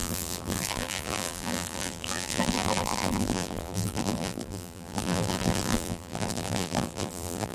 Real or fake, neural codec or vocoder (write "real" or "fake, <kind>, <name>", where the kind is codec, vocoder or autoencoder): fake, vocoder, BigVGAN v2